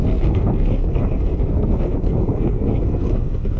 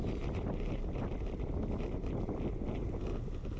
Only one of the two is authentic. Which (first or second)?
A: second